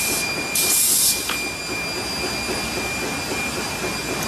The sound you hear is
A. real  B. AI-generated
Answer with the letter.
A